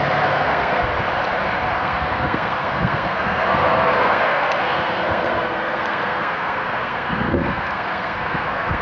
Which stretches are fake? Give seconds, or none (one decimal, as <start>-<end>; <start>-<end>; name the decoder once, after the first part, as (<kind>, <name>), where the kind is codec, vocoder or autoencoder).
0.0-0.9 (codec, SNAC); 1.8-8.8